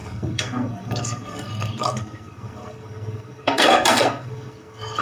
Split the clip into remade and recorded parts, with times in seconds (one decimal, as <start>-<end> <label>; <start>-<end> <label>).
0.0-5.0 remade